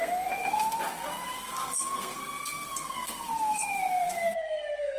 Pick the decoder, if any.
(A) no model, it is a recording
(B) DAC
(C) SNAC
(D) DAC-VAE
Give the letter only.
C